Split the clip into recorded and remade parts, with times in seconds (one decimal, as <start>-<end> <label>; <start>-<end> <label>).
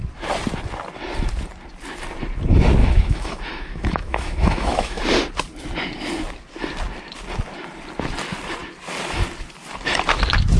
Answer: 0.0-2.8 recorded; 2.8-5.0 remade; 5.0-10.6 recorded